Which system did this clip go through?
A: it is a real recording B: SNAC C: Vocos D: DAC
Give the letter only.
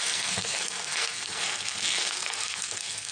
B